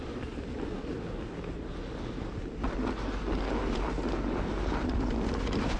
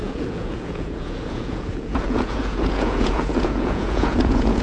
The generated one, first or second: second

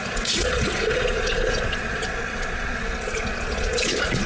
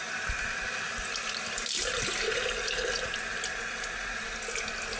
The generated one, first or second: first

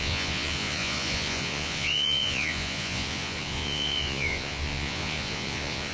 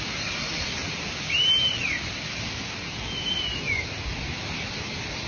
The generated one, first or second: first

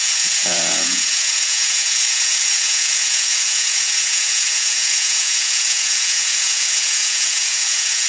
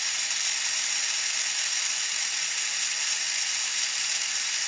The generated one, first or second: first